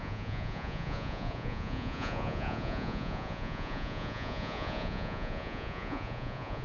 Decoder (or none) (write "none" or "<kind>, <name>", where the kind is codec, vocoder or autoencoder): vocoder, Vocos